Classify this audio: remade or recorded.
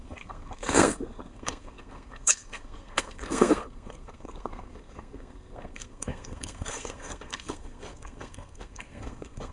remade